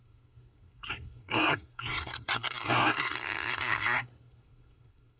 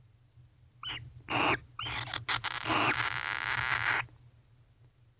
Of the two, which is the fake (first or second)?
first